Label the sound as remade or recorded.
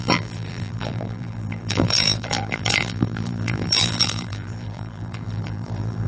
remade